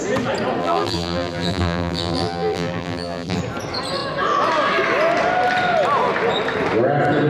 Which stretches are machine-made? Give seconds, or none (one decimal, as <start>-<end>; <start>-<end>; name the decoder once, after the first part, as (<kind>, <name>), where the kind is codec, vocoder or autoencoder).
0.6-3.4 (vocoder, BigVGAN v2)